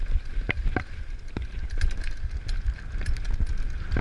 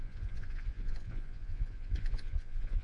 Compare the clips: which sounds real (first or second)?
first